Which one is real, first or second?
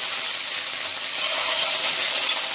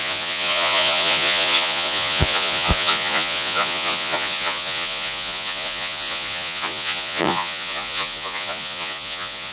first